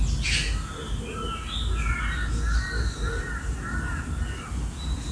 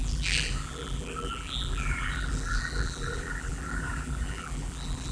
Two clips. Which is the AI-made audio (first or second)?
second